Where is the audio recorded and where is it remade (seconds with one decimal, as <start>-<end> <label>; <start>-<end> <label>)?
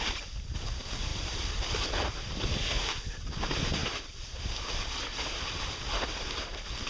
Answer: 0.0-1.1 recorded; 1.1-1.7 remade; 1.7-6.9 recorded